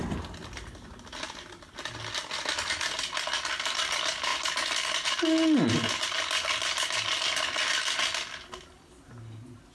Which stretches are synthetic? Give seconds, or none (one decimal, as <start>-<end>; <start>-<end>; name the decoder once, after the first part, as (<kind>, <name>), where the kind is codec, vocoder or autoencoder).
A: none